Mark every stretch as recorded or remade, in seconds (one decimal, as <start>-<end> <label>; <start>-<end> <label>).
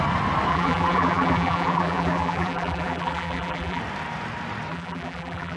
0.0-0.5 recorded; 0.5-3.8 remade; 3.8-4.7 recorded; 4.7-5.6 remade